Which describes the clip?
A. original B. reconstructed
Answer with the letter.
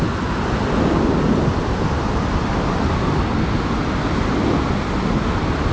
A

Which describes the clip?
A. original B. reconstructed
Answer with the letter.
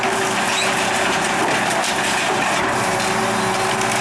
A